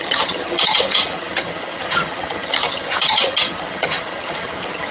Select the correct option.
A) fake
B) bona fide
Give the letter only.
A